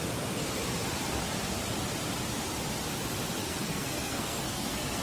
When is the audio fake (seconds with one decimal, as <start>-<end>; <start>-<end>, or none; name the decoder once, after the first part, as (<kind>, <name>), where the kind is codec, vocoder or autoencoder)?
3.4-5.0 (codec, SNAC)